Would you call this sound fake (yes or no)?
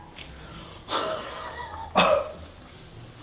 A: no